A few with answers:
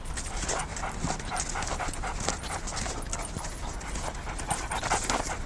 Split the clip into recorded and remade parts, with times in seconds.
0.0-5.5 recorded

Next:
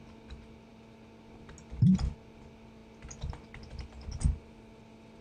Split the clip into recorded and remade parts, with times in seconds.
0.0-5.2 recorded

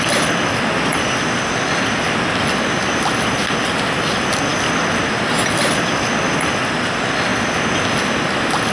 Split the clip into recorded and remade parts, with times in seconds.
0.0-8.7 recorded